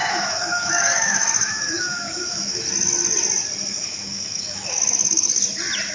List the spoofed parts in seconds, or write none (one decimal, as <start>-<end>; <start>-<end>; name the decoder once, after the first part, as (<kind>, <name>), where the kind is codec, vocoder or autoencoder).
0.0-2.6 (autoencoder, DAC-VAE); 3.8-5.4